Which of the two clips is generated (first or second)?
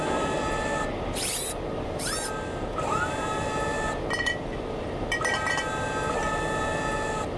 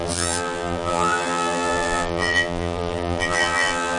second